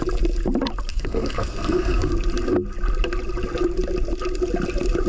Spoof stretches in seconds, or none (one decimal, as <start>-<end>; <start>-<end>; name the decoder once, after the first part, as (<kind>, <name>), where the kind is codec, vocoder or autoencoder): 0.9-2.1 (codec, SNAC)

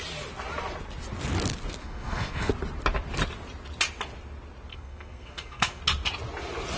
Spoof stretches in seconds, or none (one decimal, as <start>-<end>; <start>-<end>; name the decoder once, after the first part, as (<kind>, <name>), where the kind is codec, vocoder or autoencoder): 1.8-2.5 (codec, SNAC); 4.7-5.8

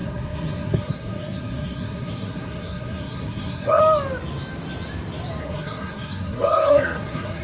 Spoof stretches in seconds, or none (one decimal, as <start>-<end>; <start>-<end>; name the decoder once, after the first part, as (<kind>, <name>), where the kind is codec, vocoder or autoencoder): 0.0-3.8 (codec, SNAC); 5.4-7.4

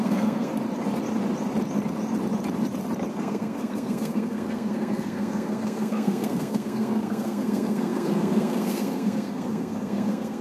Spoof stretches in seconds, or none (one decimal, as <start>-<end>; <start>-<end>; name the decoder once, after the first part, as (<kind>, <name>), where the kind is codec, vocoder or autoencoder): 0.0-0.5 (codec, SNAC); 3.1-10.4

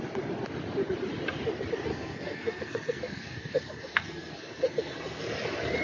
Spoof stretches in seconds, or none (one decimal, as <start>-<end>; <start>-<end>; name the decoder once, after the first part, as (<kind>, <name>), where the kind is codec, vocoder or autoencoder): 1.9-5.2 (codec, SNAC)

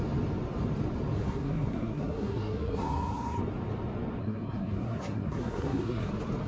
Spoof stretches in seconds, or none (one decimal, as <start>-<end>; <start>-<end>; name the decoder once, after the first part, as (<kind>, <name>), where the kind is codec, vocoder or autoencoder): 1.3-3.4 (codec, SNAC); 4.2-6.1